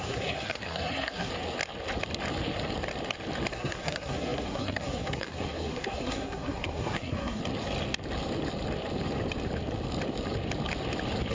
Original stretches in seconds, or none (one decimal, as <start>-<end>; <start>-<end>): 1.3-3.5; 7.4-11.3